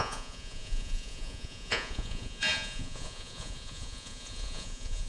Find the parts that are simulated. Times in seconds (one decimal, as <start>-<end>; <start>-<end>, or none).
0.0-5.1